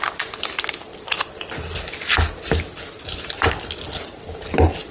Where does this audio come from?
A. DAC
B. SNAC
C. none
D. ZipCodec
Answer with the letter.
C